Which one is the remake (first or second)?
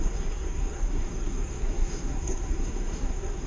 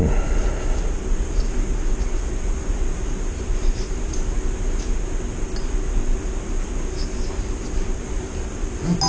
first